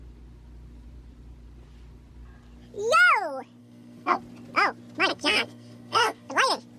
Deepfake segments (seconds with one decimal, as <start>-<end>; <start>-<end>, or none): 3.6-4.2; 5.1-6.3